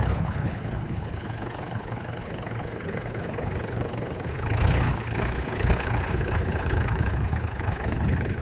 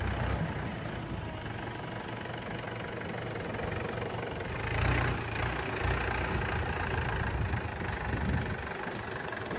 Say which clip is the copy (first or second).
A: first